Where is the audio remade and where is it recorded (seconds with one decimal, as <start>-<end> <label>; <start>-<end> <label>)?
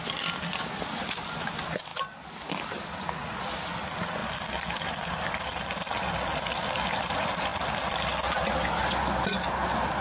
0.0-10.0 recorded